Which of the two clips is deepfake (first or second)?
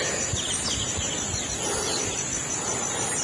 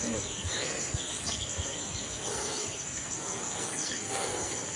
second